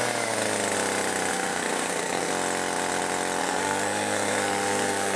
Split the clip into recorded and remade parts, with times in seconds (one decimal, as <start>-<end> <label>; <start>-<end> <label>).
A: 0.0-1.3 recorded; 1.3-2.3 remade; 2.3-3.4 recorded; 3.4-5.2 remade